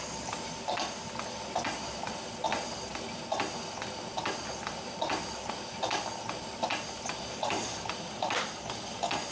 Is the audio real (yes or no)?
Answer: yes